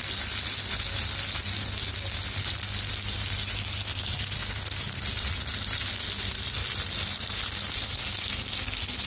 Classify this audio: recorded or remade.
recorded